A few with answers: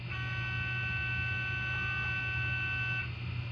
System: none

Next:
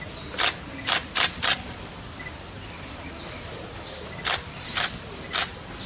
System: none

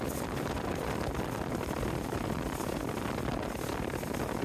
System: none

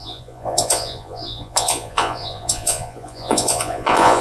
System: vocoder, Vocos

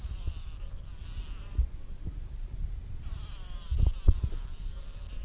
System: none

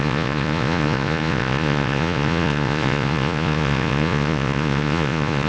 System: vocoder, Vocos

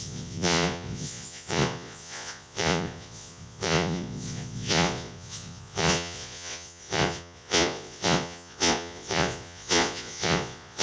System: vocoder, Vocos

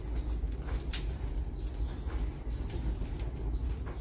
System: none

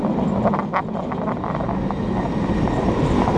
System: none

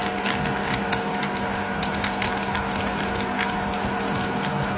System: none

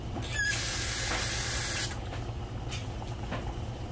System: none